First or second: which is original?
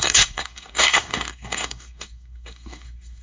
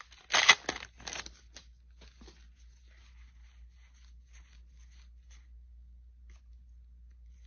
second